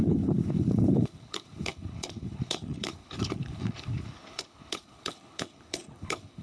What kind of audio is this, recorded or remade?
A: remade